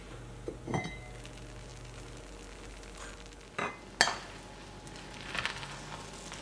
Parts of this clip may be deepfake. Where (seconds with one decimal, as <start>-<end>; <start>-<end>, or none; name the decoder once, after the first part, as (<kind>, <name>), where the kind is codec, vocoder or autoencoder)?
none